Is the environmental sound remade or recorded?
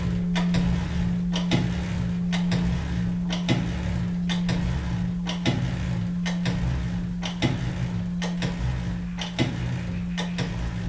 recorded